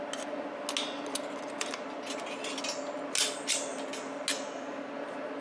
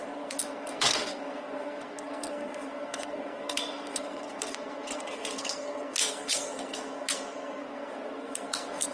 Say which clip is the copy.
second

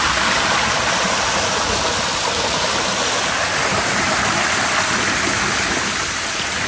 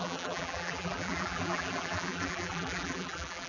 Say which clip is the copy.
second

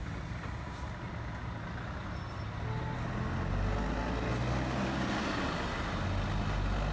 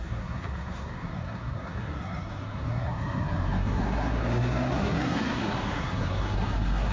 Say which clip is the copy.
second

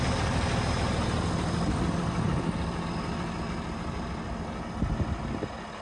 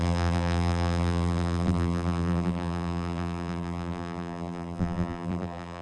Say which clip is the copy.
second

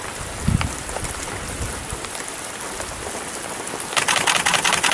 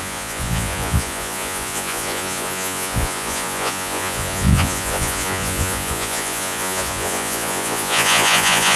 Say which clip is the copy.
second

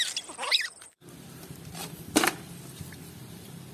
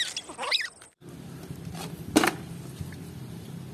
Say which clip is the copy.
first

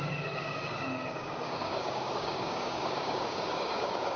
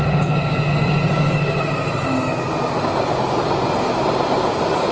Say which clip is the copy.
first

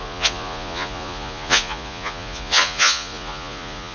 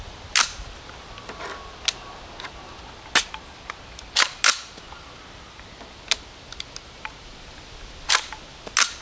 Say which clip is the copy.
first